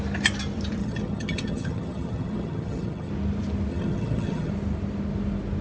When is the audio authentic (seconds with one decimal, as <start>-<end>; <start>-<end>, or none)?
0.0-0.8; 3.1-3.7; 4.5-5.6

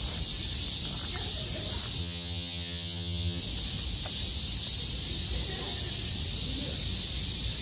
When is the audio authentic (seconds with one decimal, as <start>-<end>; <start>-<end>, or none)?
0.0-2.0; 3.4-7.6